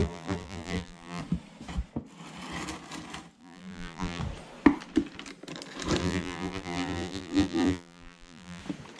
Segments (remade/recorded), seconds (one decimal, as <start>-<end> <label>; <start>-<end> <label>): 0.0-1.2 remade; 1.2-3.4 recorded; 3.4-4.2 remade; 4.2-6.0 recorded; 6.0-8.6 remade; 8.6-9.0 recorded